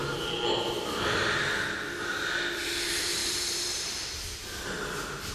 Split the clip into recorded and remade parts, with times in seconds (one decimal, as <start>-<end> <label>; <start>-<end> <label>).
0.0-3.2 recorded; 3.2-5.3 remade